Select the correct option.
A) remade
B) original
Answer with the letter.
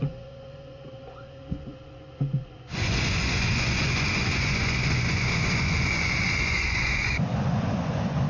A